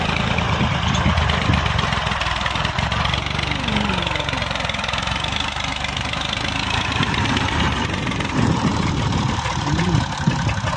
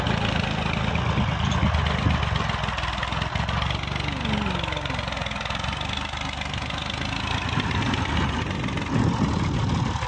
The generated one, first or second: first